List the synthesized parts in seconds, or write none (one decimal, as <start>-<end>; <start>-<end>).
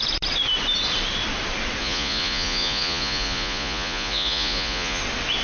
1.8-5.0